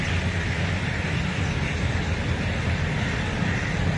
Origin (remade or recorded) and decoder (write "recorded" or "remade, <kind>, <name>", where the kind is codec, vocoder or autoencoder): recorded